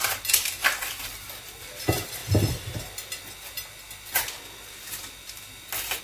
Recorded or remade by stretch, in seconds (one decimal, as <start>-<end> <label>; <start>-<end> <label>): 0.0-0.6 recorded; 0.6-1.3 remade; 1.3-6.0 recorded